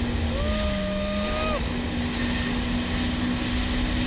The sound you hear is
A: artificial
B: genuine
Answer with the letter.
B